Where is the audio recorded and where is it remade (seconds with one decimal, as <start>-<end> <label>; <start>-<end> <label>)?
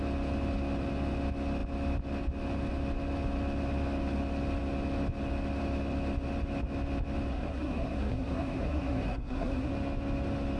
0.0-7.3 recorded; 7.3-9.7 remade; 9.7-10.6 recorded